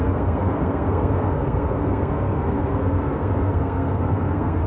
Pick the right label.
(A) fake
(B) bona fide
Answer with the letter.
A